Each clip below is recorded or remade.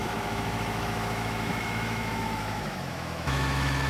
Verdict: remade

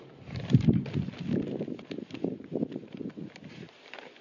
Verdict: recorded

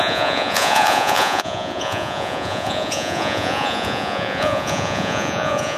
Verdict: remade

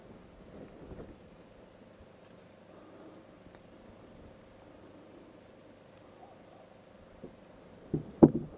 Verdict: recorded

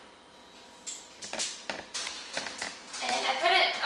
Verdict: recorded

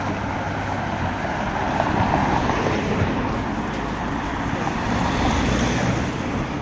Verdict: recorded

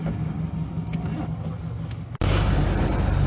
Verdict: recorded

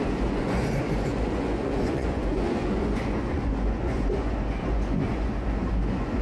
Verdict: remade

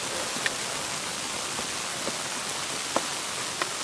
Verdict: recorded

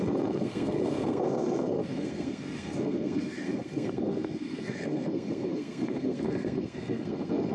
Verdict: remade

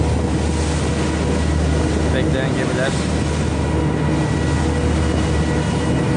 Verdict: recorded